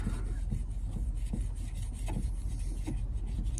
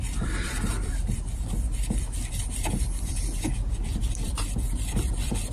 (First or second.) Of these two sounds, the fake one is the second